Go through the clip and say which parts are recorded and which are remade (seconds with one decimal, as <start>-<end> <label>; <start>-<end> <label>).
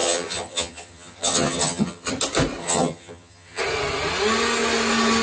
0.0-2.1 remade; 2.1-2.6 recorded; 2.6-3.6 remade; 3.6-5.2 recorded